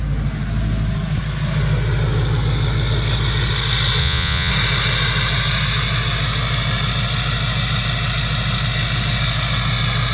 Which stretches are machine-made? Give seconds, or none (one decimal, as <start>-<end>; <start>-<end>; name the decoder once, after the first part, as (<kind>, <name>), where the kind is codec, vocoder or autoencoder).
4.0-4.5 (vocoder, Vocos)